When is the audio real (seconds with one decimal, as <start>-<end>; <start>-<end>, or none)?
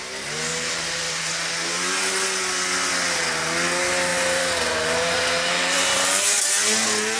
0.0-0.5; 1.3-4.1; 6.4-7.2